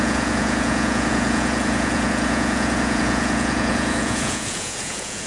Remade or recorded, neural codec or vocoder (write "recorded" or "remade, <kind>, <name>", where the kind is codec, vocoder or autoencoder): remade, vocoder, Vocos